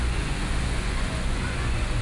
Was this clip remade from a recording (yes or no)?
yes